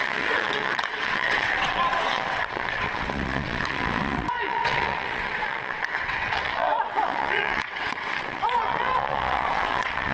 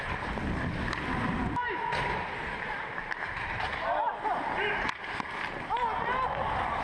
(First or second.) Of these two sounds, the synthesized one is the first